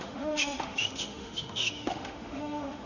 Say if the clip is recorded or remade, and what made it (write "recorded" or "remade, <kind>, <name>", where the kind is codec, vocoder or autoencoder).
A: remade, autoencoder, DAC-VAE